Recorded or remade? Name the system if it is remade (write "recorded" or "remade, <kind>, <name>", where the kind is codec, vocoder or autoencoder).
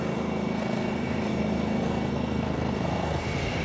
remade, codec, SNAC